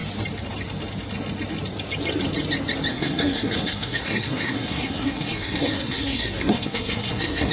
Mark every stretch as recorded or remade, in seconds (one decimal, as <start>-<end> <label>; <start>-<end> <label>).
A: 0.0-2.9 recorded; 2.9-7.5 remade